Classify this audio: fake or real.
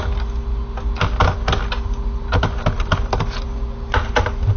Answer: real